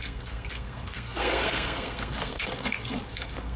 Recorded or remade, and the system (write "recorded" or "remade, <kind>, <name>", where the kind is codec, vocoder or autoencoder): remade, codec, SNAC